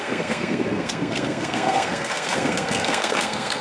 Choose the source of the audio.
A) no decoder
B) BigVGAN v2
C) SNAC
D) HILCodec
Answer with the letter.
C